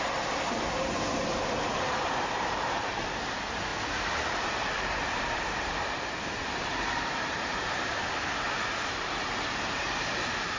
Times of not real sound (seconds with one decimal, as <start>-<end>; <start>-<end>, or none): 0.0-3.7; 4.4-10.6